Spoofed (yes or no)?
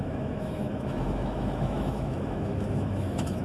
yes